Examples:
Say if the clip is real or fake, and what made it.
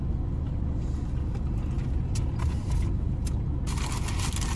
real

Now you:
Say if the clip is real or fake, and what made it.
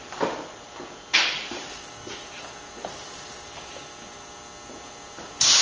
real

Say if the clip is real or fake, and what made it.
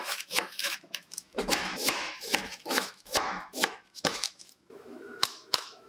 fake, autoencoder, DAC-VAE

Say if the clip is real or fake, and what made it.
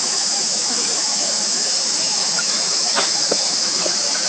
fake, autoencoder, DAC-VAE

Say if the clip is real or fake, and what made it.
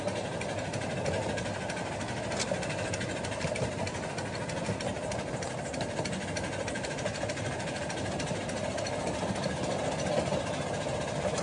real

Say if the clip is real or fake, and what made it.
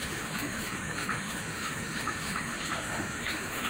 fake, autoencoder, DAC-VAE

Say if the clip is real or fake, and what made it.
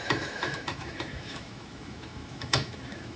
fake, autoencoder, DAC-VAE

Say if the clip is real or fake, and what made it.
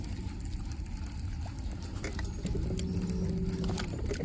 real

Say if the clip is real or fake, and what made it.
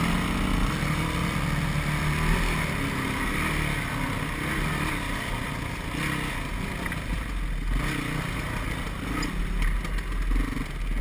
real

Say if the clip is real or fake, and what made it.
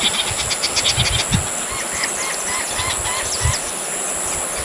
real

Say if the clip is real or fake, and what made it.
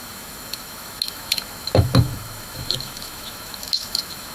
fake, autoencoder, DAC-VAE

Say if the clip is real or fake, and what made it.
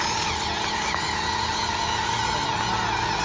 real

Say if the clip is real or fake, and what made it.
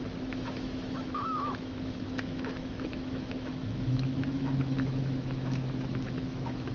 fake, autoencoder, DAC-VAE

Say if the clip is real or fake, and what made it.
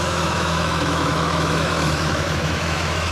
fake, autoencoder, DAC-VAE